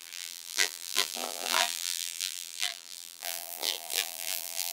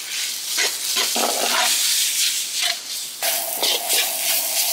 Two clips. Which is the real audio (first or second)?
second